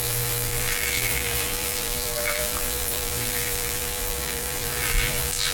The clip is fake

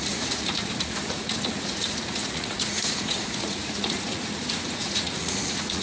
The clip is fake